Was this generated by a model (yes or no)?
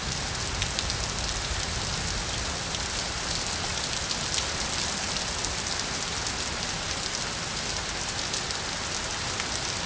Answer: no